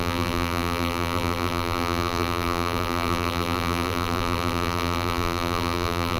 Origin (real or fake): fake